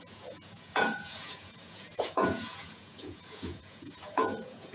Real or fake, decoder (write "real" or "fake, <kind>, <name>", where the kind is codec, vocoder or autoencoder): fake, vocoder, Vocos